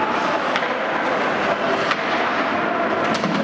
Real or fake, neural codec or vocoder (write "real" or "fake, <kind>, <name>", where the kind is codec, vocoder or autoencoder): real